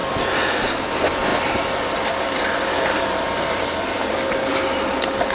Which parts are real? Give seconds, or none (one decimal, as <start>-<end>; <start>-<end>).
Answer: 0.7-1.3; 4.5-5.3